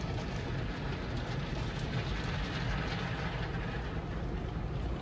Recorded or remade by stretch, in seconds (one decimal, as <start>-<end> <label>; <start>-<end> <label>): 0.0-5.0 recorded